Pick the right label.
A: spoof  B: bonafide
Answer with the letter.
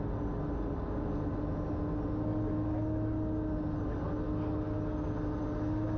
B